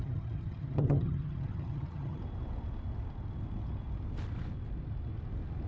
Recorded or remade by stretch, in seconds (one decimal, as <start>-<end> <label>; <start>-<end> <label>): 0.0-2.2 remade; 2.2-5.7 recorded